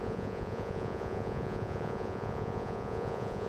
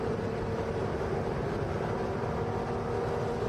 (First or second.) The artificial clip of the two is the first